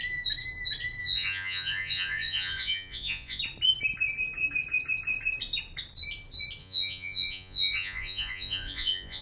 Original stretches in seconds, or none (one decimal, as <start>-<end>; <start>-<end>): 0.0-1.0; 3.4-6.6